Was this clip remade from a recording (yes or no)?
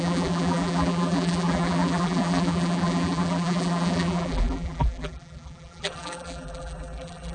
yes